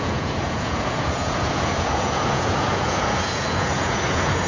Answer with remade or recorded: remade